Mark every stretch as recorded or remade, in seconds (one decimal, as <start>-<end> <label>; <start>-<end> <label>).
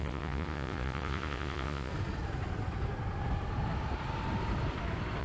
0.0-1.9 remade; 1.9-5.2 recorded